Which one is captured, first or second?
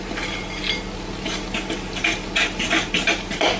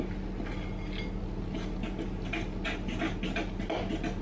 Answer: second